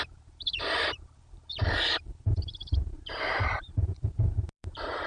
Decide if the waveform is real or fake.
fake